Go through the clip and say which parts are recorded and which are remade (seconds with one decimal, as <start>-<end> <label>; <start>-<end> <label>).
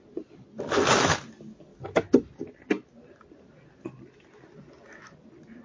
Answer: 0.0-5.6 recorded